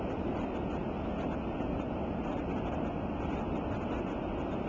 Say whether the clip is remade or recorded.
recorded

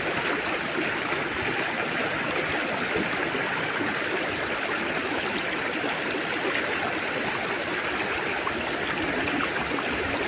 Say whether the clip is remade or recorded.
recorded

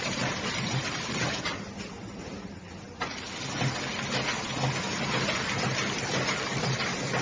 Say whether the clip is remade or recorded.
recorded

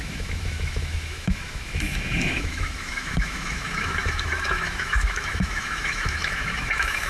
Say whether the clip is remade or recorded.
remade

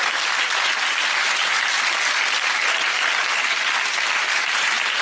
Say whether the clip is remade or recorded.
recorded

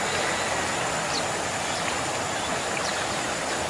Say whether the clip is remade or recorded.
recorded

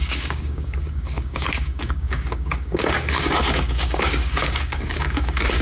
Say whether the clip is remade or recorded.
remade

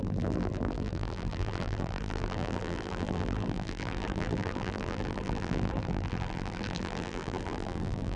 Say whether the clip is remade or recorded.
remade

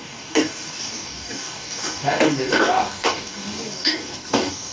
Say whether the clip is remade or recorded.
remade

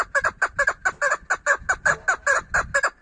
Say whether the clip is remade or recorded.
recorded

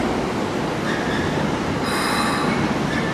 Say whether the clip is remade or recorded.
recorded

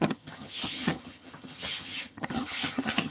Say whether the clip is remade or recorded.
remade